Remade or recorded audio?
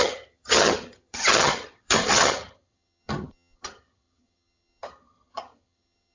remade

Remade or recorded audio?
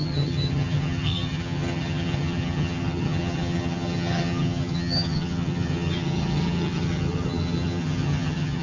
remade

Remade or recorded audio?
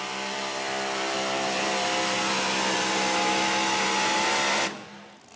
recorded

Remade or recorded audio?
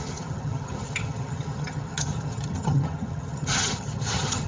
remade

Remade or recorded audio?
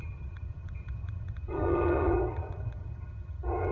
remade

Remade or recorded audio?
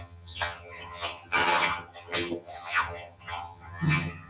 remade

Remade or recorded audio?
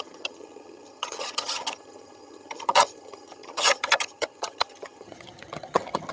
remade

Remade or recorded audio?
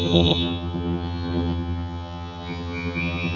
remade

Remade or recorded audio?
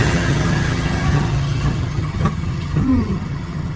remade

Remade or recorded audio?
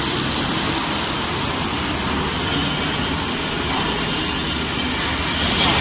recorded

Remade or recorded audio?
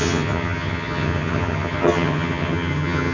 remade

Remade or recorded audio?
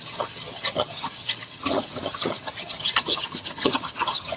remade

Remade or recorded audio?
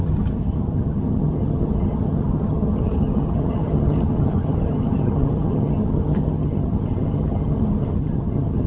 remade